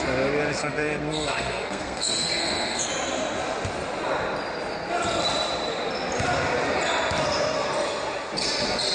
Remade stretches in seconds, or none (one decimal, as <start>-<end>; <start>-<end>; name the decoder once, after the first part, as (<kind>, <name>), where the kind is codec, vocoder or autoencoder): 0.6-2.9 (codec, SNAC)